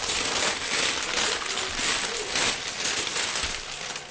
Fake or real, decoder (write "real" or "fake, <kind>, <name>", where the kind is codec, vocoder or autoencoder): real